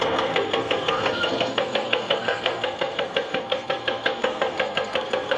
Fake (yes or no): yes